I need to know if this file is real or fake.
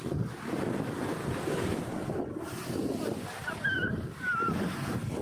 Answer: real